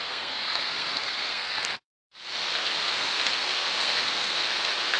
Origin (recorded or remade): remade